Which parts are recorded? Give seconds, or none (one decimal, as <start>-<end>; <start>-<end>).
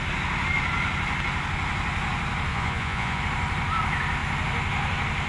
0.0-2.5; 3.2-5.3